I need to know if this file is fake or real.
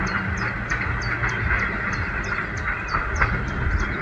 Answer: real